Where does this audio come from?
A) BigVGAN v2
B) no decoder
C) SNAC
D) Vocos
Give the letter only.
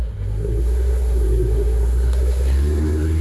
C